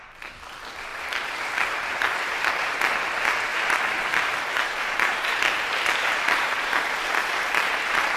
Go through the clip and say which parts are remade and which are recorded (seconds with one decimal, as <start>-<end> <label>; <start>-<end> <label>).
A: 0.0-0.9 recorded; 0.9-2.5 remade; 2.5-3.5 recorded; 3.5-8.2 remade